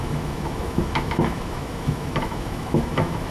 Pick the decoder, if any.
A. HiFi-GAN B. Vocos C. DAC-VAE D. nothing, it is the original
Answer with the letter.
C